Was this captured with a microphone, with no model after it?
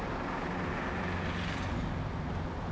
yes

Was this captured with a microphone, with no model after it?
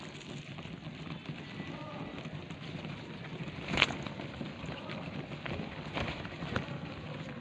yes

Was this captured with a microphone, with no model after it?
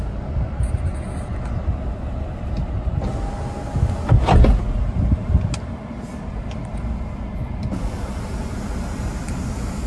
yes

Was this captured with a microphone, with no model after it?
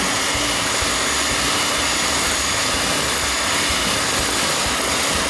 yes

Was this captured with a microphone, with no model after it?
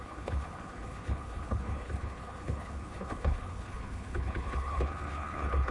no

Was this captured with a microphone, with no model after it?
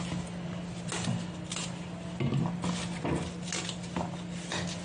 yes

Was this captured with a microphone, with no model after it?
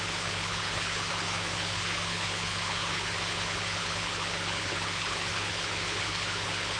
no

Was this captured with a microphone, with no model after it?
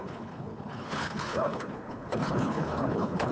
no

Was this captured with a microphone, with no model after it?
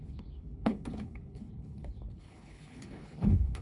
no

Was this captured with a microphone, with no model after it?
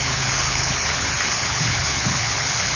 no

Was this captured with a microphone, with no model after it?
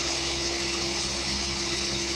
no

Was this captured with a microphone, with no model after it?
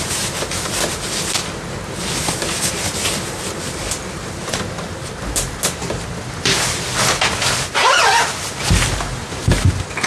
yes